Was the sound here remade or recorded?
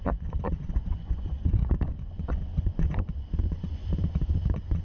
remade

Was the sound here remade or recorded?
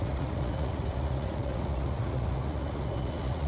remade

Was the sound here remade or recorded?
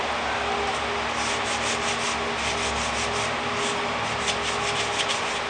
recorded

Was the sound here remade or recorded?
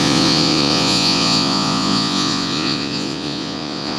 remade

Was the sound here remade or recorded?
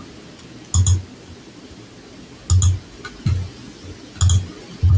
recorded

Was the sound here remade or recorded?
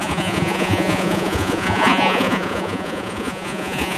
remade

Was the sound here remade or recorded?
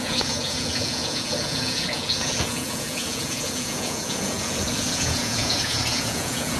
remade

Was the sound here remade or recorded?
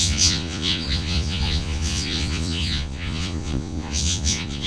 remade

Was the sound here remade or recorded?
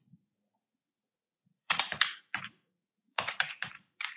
remade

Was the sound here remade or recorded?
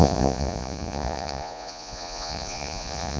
remade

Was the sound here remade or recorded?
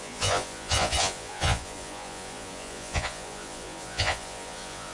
remade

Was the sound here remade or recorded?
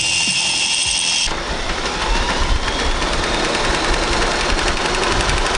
recorded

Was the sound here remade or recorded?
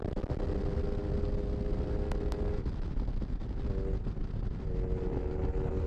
recorded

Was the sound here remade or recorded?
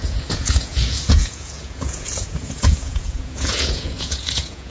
remade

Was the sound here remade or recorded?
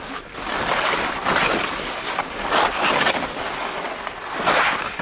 recorded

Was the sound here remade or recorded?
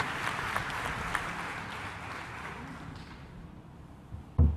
recorded